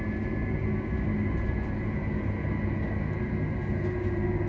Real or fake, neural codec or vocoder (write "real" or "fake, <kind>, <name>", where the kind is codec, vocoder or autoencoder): real